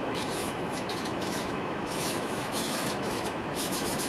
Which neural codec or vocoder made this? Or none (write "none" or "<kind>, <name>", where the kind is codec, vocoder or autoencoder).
autoencoder, DAC-VAE